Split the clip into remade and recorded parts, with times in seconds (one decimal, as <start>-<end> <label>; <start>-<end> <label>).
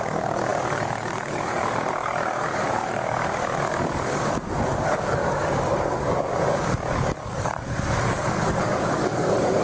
0.0-9.6 remade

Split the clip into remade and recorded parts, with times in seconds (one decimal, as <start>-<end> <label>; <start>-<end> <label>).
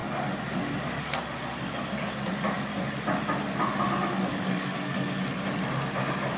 0.0-4.3 recorded; 4.3-5.2 remade; 5.2-6.4 recorded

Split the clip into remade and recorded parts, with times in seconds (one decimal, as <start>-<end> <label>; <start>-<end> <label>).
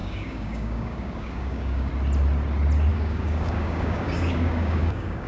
0.0-1.9 remade; 1.9-2.9 recorded; 2.9-5.3 remade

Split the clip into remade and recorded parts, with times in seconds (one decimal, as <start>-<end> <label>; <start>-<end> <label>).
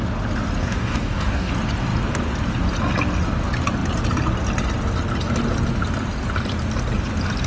0.0-0.6 recorded; 0.6-1.5 remade; 1.5-7.5 recorded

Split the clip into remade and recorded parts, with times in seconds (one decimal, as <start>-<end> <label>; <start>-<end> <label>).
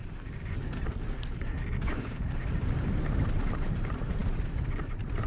0.0-1.7 recorded; 1.7-2.2 remade; 2.2-5.3 recorded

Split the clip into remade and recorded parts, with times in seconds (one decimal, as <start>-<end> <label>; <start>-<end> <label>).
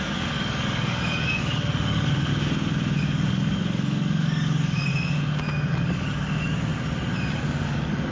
0.0-2.3 remade; 2.3-3.0 recorded; 3.0-4.9 remade; 4.9-5.7 recorded; 5.7-6.7 remade; 6.7-7.4 recorded; 7.4-8.1 remade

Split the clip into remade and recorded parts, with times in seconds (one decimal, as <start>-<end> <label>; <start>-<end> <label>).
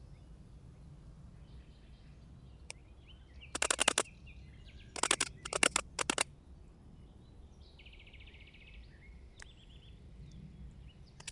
0.0-11.3 recorded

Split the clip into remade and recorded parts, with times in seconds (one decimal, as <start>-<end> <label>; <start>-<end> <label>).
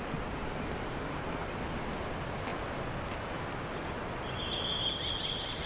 0.0-5.7 recorded